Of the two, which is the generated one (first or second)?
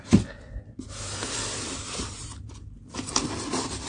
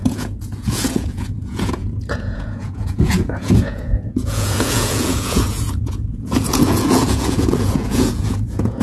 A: second